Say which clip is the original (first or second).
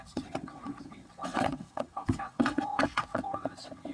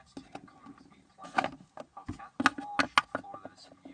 second